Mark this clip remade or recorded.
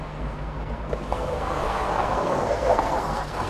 remade